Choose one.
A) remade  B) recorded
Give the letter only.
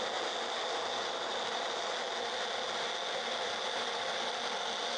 B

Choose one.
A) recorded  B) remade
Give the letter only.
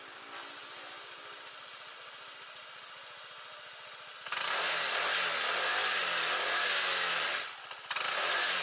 A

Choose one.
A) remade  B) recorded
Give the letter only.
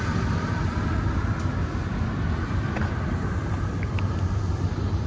A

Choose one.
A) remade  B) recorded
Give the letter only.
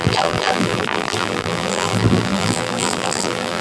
A